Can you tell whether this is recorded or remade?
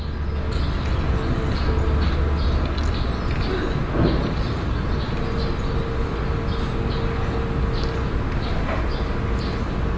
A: recorded